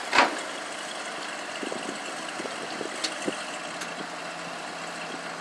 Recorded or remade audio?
recorded